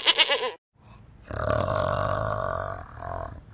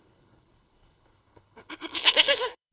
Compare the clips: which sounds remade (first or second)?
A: second